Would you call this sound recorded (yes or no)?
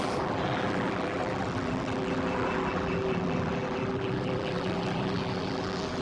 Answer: no